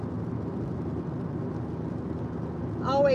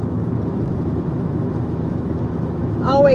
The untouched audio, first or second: first